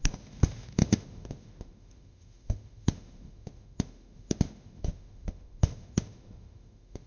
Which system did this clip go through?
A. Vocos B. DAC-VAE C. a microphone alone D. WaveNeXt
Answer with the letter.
B